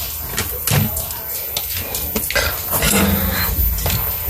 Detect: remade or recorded recorded